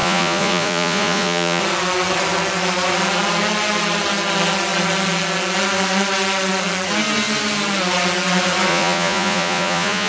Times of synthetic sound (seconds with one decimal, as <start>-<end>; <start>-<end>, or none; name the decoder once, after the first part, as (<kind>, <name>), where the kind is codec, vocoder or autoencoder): 0.0-1.6 (vocoder, Vocos); 8.7-10.1